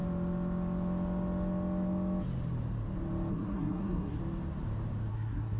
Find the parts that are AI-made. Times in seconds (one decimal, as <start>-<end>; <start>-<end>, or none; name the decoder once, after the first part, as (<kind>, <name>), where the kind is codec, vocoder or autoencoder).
3.3-4.2 (codec, SNAC); 5.1-5.6